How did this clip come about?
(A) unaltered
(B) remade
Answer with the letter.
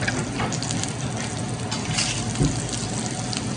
A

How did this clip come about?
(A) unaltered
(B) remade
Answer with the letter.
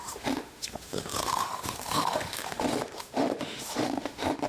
B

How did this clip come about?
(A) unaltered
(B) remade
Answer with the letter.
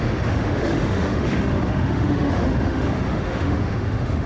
B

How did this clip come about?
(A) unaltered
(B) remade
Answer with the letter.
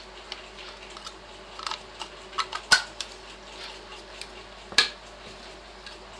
A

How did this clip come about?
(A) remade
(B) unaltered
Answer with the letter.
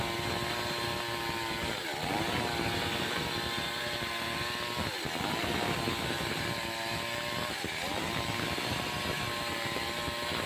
B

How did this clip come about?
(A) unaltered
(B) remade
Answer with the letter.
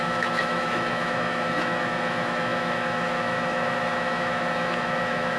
B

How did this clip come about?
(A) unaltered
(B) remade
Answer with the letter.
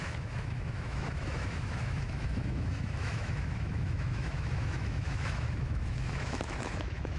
B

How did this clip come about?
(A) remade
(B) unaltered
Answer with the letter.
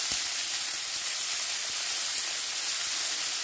B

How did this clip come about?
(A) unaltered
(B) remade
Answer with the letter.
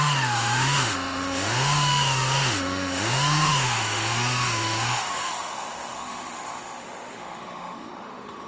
B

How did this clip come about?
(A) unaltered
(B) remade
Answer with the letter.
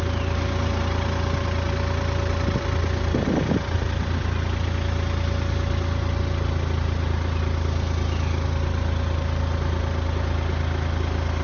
A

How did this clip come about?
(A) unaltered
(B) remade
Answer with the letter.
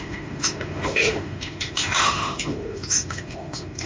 B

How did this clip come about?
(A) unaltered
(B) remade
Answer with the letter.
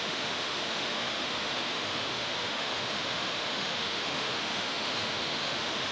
B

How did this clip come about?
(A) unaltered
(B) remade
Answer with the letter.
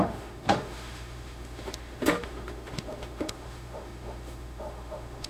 B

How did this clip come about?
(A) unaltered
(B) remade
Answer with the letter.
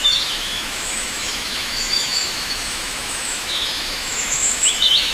B